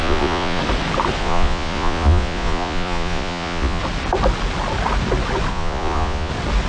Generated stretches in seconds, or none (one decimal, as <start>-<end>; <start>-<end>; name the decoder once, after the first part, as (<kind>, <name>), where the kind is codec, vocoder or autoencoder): 0.0-0.6 (vocoder, Vocos); 1.2-3.8; 5.5-6.3

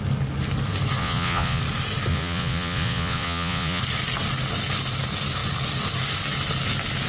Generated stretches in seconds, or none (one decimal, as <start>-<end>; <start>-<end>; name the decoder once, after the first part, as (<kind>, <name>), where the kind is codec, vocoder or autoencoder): 1.0-1.6 (vocoder, Vocos); 2.1-3.8

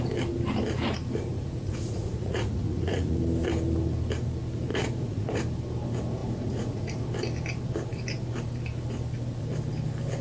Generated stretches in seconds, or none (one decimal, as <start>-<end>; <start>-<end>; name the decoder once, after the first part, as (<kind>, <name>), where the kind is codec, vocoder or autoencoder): 1.3-3.2 (vocoder, Vocos); 4.7-5.4; 6.2-7.0

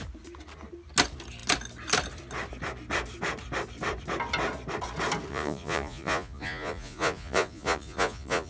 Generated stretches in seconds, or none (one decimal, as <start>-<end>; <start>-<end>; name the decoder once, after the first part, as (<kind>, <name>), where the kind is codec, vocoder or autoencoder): 5.3-8.5 (vocoder, Vocos)

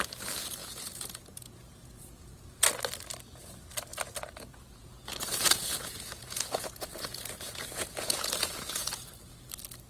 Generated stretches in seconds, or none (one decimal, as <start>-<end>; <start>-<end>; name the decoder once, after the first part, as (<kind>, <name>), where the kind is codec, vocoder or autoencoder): 0.6-2.7 (vocoder, Vocos); 3.9-9.1

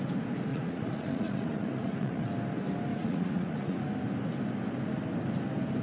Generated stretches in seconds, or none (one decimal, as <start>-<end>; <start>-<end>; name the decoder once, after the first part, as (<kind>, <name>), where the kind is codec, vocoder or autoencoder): 0.5-2.3 (vocoder, Vocos); 2.9-3.8